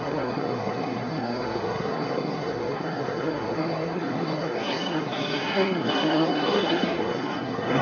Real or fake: fake